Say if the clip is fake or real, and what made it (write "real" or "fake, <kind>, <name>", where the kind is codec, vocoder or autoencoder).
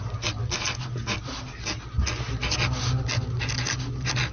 real